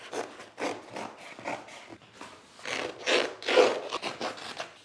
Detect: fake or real real